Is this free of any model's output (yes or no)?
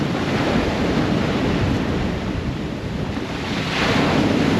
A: yes